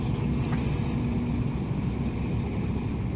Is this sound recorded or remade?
recorded